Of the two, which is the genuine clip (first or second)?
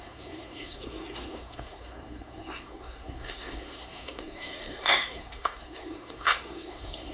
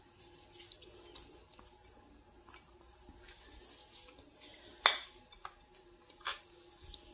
second